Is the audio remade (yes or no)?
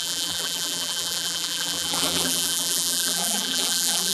yes